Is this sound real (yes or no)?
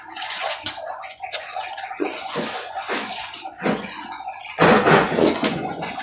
no